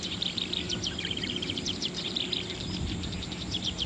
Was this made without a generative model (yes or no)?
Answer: no